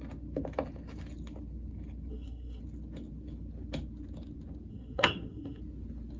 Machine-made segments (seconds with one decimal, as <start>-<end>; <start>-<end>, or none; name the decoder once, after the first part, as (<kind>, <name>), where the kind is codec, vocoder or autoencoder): 2.1-2.6 (codec, SNAC); 4.7-5.6